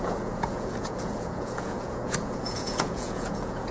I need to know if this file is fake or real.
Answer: fake